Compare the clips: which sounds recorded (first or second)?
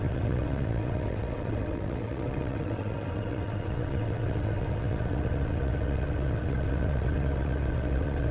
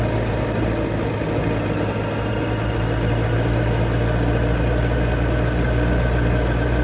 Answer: second